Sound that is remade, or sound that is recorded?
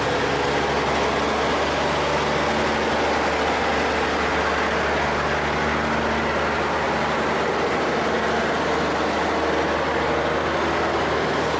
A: recorded